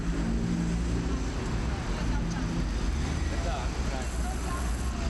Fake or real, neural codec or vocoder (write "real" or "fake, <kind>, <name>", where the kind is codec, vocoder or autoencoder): real